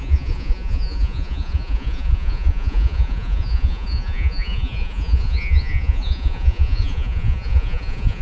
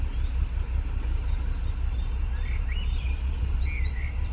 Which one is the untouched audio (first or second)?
second